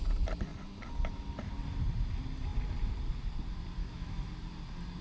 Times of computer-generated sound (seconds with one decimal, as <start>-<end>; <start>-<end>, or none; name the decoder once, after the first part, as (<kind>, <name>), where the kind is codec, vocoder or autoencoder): 3.8-4.3 (autoencoder, DAC-VAE)